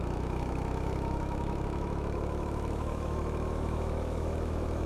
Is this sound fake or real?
fake